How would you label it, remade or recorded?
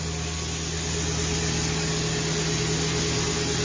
recorded